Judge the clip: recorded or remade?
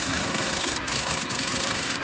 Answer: remade